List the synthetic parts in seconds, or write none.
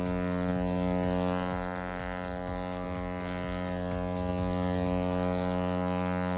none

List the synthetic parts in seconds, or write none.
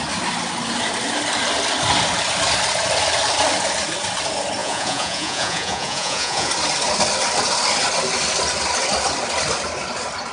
4.6-6.5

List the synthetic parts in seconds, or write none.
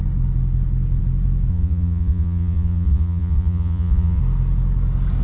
1.5-4.2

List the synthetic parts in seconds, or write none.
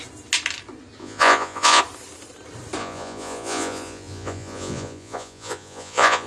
1.0-1.8; 2.8-6.3